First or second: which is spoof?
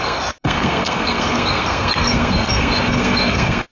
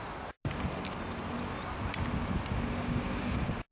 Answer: first